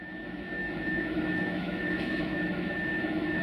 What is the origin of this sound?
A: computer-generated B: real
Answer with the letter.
A